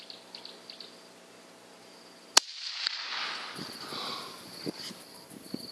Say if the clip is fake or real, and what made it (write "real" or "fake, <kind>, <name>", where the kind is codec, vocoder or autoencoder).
real